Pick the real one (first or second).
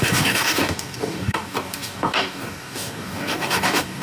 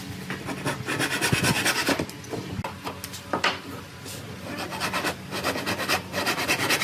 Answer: second